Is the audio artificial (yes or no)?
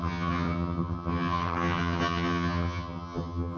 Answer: yes